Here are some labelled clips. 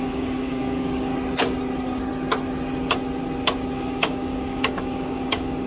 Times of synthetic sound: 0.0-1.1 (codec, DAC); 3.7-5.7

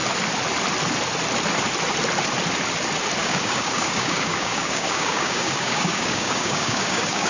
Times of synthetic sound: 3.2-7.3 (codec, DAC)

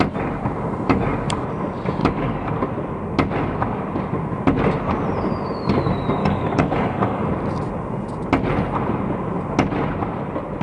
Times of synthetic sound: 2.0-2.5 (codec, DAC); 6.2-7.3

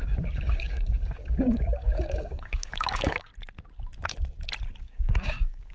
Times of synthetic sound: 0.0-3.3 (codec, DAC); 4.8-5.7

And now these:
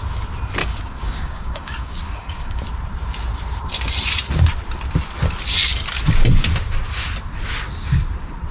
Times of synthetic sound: 0.6-2.6 (codec, DAC)